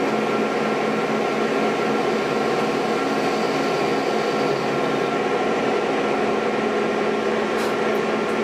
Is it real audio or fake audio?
real